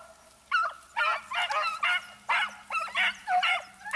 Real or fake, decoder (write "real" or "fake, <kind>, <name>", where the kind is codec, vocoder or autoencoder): real